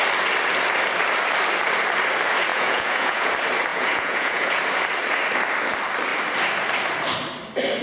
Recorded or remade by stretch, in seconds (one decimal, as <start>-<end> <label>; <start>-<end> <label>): 0.0-2.5 recorded; 2.5-3.3 remade; 3.3-3.7 recorded; 3.7-4.6 remade; 4.6-7.8 recorded